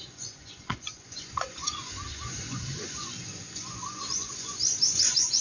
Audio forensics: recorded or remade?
remade